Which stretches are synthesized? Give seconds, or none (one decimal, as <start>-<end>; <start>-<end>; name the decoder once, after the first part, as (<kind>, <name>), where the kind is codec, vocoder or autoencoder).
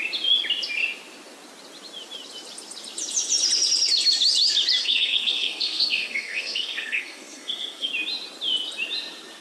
4.8-7.9 (codec, SNAC)